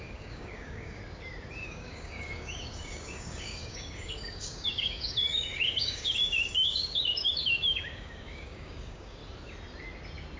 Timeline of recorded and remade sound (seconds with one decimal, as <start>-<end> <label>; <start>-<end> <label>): 0.0-1.0 remade; 1.0-1.5 recorded; 1.5-9.2 remade; 9.2-10.4 recorded

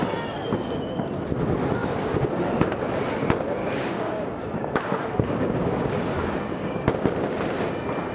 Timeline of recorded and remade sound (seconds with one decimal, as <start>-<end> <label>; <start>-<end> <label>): 0.0-3.6 recorded; 3.6-6.9 remade; 6.9-8.1 recorded

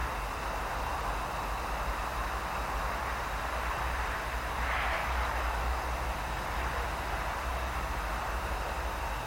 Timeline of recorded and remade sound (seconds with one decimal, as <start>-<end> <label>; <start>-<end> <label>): 0.0-5.0 recorded; 5.0-5.6 remade; 5.6-9.3 recorded

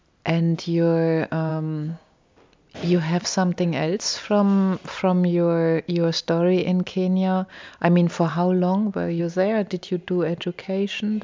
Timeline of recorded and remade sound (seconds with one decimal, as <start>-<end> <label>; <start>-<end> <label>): 0.0-1.5 recorded; 1.5-2.4 remade; 2.4-11.2 recorded

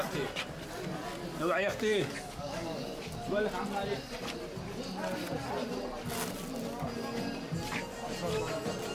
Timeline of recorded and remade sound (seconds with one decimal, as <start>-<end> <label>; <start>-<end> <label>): 0.0-1.3 recorded; 1.3-3.0 remade; 3.0-8.9 recorded

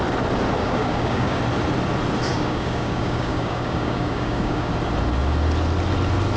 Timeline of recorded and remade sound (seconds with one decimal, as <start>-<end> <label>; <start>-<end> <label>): 0.0-0.6 recorded; 0.6-1.4 remade; 1.4-2.3 recorded; 2.3-4.7 remade; 4.7-6.4 recorded

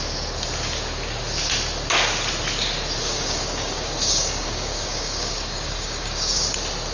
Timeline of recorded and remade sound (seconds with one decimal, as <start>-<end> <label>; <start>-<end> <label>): 0.0-3.0 recorded; 3.0-6.5 remade; 6.5-6.9 recorded

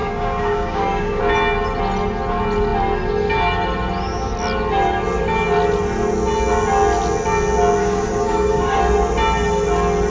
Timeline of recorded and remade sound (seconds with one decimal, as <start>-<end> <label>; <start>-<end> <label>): 0.0-1.2 remade; 1.2-7.8 recorded; 7.8-8.8 remade; 8.8-10.1 recorded